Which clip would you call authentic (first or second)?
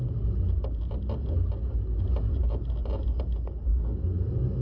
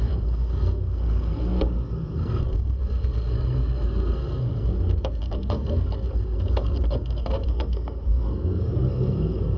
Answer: first